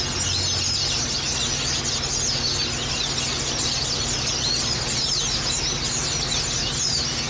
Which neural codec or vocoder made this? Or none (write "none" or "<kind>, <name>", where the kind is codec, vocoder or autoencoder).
none